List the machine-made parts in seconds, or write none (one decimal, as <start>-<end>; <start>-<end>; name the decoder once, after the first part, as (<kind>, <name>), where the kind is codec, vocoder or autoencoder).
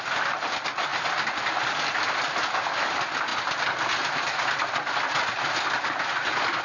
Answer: none